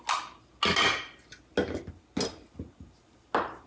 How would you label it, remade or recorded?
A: recorded